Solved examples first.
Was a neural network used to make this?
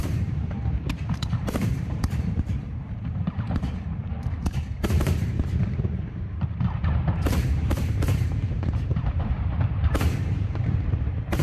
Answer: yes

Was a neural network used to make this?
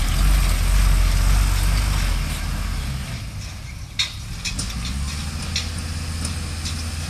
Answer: no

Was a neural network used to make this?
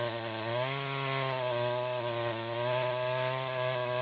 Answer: no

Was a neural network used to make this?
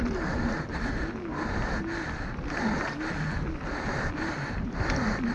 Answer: no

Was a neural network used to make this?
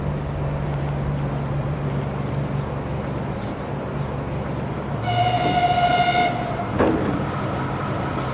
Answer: no